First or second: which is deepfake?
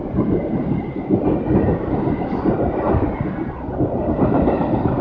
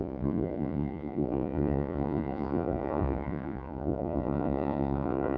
second